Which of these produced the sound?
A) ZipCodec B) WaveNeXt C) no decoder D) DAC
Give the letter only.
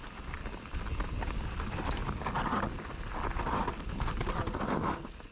C